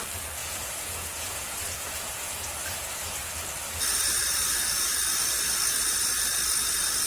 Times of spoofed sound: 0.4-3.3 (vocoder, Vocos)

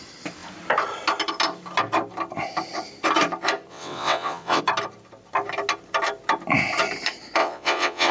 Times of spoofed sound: 3.7-4.6 (vocoder, WaveNeXt); 7.4-8.1

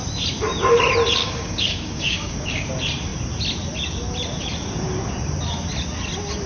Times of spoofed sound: 1.2-2.7 (codec, DAC)

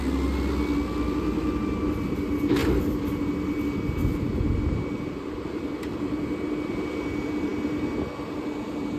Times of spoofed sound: none

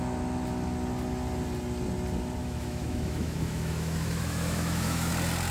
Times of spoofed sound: 2.4-5.1 (autoencoder, DAC-VAE)

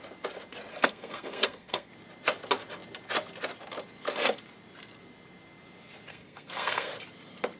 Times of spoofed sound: 0.7-1.9 (codec, SNAC); 6.1-6.9